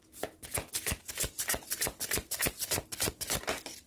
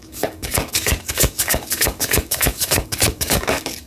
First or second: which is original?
first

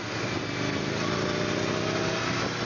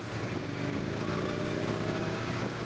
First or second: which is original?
first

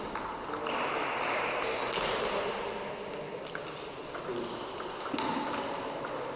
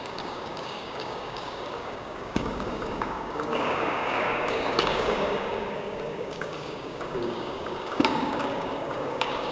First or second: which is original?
first